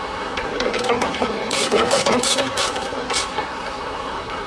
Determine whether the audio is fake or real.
fake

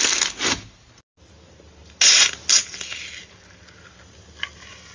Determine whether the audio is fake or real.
real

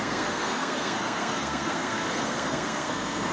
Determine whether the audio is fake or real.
fake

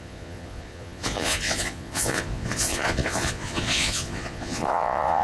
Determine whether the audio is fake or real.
fake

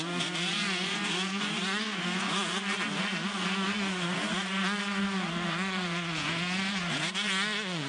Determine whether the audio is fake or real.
fake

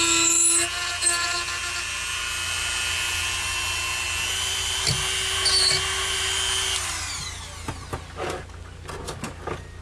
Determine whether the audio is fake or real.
real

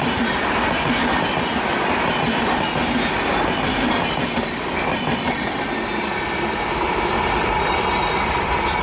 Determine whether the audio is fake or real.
real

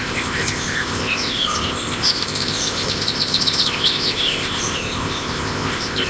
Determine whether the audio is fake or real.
fake